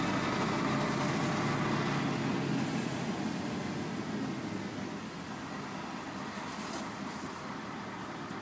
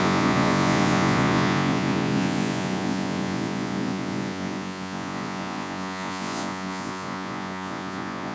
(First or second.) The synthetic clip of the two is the second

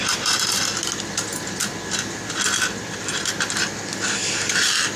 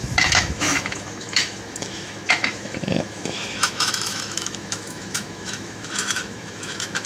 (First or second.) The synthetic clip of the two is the second